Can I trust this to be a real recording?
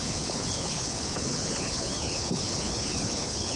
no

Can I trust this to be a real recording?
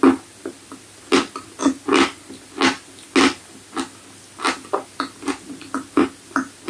yes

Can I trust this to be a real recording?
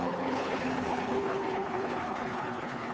no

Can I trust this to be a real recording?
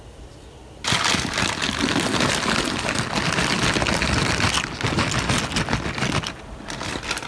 yes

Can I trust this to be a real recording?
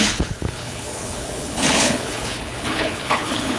no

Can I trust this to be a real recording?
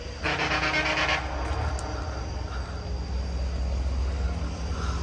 yes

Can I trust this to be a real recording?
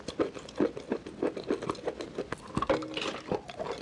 yes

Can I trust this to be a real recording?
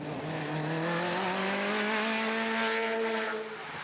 yes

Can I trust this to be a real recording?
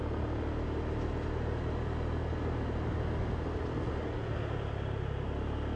yes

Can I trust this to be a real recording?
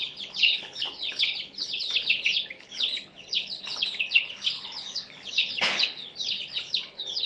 no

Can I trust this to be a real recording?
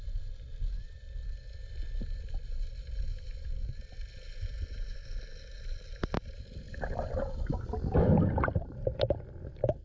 yes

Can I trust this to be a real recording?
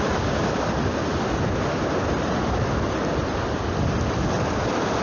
yes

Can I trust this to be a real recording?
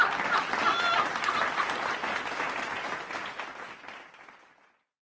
yes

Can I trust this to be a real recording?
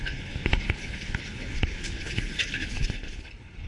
no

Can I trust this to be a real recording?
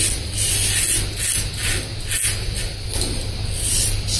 yes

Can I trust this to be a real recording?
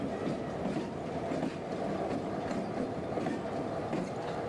yes